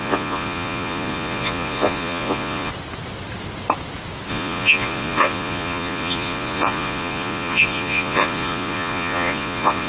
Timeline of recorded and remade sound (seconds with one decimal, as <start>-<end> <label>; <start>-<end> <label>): 0.0-2.7 remade; 2.7-4.3 recorded; 4.3-9.9 remade